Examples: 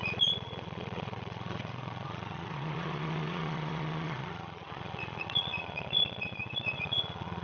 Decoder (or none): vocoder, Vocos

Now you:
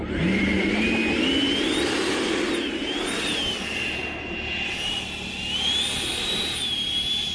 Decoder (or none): none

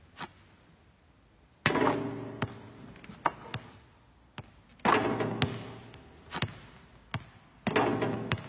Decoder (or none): none